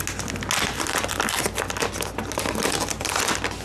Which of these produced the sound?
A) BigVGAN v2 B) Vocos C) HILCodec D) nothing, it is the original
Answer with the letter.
D